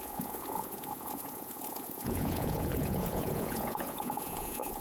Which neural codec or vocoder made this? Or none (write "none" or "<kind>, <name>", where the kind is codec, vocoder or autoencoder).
vocoder, Vocos